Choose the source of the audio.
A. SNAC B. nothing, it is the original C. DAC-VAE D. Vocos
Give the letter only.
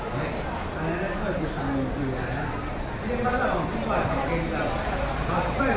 B